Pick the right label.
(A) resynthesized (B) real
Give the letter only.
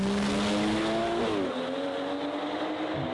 B